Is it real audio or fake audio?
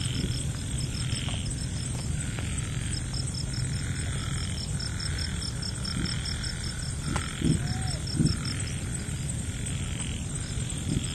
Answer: real